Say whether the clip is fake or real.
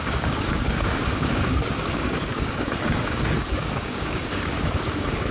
fake